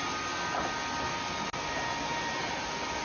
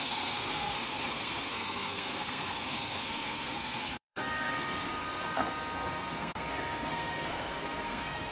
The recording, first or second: first